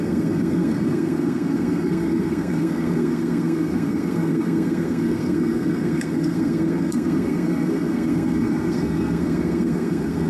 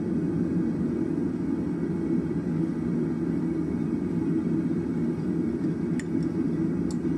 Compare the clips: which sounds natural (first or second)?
second